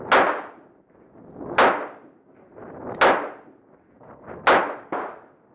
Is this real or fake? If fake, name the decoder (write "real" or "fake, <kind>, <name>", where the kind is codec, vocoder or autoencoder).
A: real